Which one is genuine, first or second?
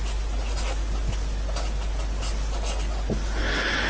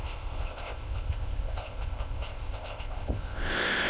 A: first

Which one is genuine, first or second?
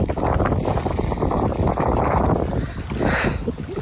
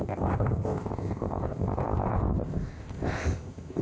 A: first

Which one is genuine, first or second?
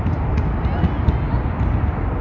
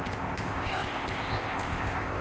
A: first